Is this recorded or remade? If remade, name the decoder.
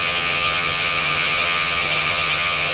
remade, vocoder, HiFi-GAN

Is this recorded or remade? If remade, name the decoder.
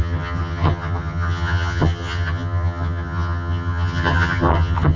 remade, vocoder, HiFi-GAN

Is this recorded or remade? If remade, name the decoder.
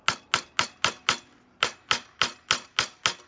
recorded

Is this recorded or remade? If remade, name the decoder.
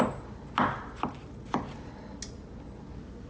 recorded